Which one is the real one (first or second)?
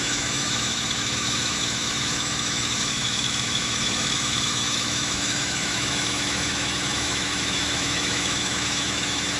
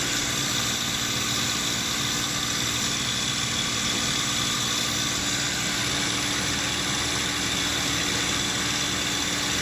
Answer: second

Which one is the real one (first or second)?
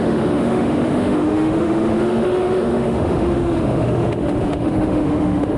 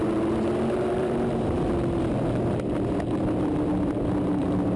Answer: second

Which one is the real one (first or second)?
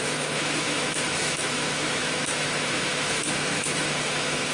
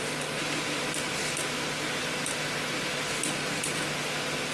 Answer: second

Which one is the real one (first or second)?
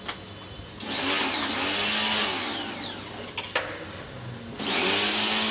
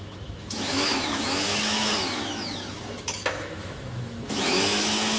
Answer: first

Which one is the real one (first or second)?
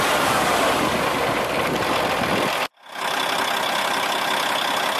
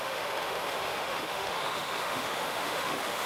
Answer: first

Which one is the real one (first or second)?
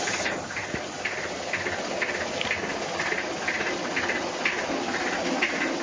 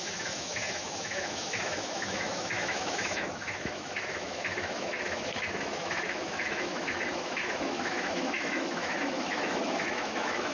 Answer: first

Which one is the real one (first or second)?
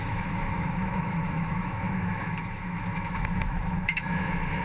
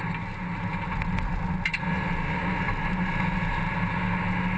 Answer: second